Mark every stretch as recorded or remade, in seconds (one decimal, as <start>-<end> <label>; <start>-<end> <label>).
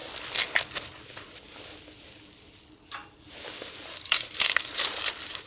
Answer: 0.0-3.0 recorded; 3.0-5.5 remade